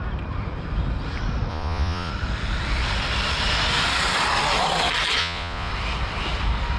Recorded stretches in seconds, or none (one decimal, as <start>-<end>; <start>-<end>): 0.0-1.5; 2.1-5.2; 5.7-6.8